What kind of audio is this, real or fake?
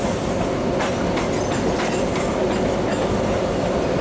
real